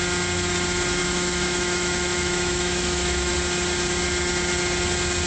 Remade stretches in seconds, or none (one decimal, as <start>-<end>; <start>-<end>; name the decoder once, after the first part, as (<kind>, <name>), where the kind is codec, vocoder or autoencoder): 1.0-3.3 (autoencoder, DAC-VAE)